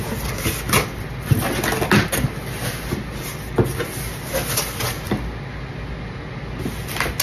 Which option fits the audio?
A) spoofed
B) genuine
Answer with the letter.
B